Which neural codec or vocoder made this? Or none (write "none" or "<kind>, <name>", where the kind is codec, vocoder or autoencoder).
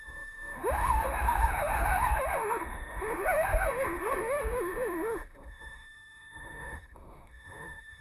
autoencoder, DAC-VAE